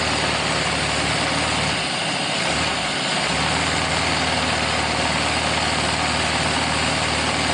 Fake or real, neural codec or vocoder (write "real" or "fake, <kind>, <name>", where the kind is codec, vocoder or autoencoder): real